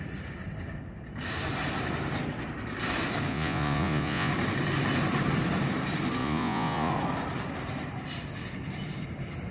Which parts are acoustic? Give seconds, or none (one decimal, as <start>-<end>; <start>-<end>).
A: 0.0-3.3; 4.3-6.2; 6.9-9.5